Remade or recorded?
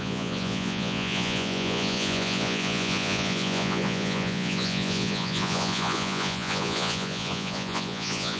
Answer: remade